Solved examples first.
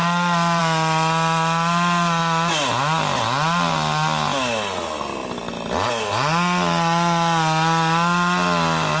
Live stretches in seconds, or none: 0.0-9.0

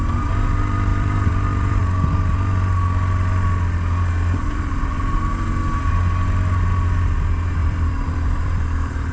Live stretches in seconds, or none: 0.0-0.9; 1.8-7.6

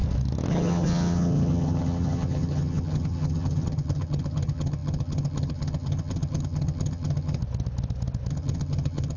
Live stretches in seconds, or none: 0.0-0.5; 7.4-8.3

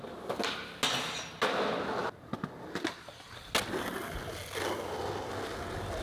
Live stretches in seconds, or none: 0.0-6.0